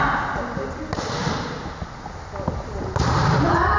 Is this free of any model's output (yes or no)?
yes